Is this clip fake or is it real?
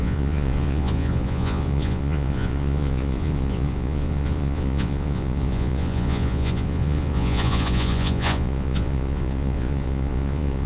fake